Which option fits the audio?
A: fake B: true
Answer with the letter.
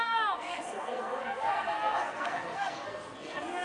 A